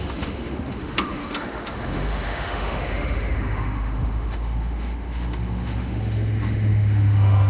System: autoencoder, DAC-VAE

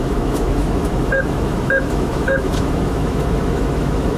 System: autoencoder, DAC-VAE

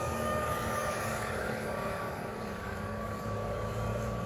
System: codec, DAC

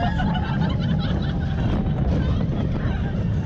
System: none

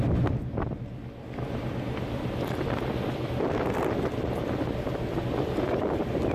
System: none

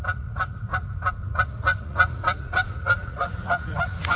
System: vocoder, Vocos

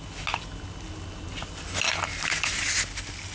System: none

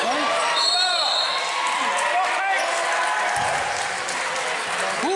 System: none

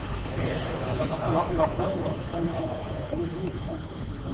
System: codec, HILCodec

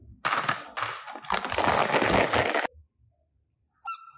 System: none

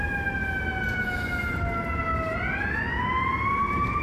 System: none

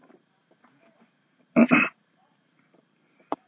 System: vocoder, BigVGAN v2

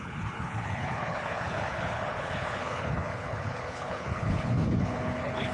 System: codec, HILCodec